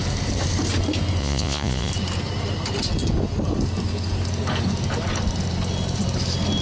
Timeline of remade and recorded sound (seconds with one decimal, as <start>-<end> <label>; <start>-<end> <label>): 0.0-1.2 recorded; 1.2-1.9 remade; 1.9-6.6 recorded